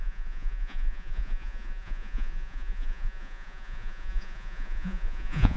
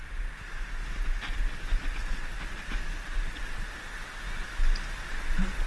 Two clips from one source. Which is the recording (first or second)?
second